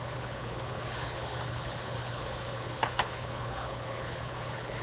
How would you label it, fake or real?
fake